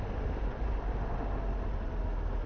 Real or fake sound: real